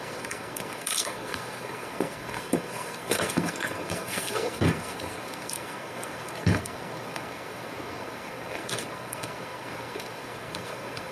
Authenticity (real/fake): fake